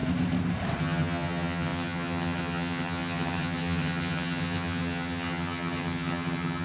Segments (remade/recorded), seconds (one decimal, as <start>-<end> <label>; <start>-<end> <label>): 0.0-0.8 recorded; 0.8-6.6 remade